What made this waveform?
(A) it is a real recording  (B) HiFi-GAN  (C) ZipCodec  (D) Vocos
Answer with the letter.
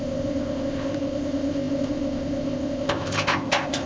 C